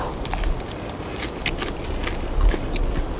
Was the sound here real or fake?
real